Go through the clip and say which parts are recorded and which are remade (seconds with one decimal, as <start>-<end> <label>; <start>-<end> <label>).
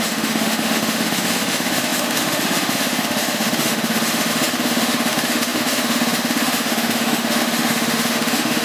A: 0.0-8.6 remade